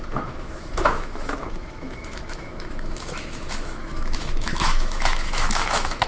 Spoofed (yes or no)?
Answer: yes